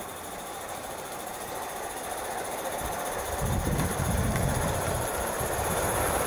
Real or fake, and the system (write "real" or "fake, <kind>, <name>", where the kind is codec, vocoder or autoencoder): fake, vocoder, BigVGAN v2